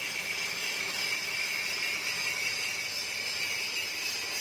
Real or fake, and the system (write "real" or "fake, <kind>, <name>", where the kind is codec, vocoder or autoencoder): fake, vocoder, BigVGAN v2